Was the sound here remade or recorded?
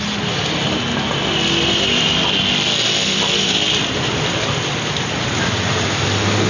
recorded